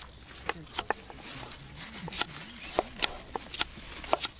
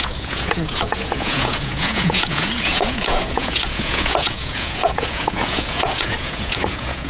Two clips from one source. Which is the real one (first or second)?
first